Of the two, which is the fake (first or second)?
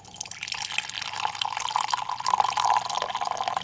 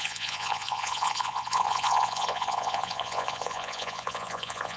second